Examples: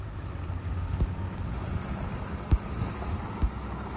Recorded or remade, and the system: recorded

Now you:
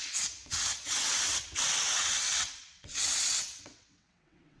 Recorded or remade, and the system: remade, vocoder, WaveNeXt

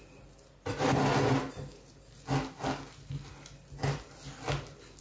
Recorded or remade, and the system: recorded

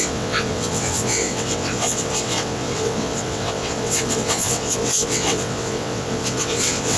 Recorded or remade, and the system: remade, vocoder, WaveNeXt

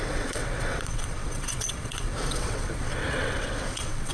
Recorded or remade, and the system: remade, vocoder, WaveNeXt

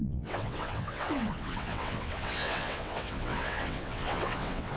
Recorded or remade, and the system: remade, vocoder, WaveNeXt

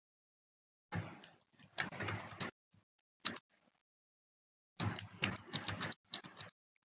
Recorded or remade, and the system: recorded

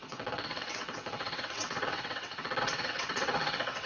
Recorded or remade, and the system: remade, vocoder, WaveNeXt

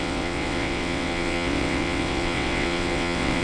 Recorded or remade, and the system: remade, vocoder, WaveNeXt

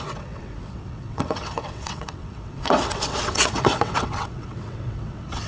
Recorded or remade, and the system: remade, vocoder, WaveNeXt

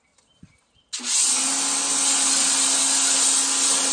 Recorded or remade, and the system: recorded